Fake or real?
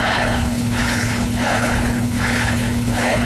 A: fake